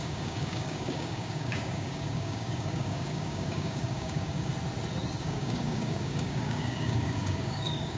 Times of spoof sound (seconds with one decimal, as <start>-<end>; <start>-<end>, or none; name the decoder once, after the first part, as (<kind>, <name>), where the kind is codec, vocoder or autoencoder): 0.0-4.5 (codec, DAC); 5.2-8.0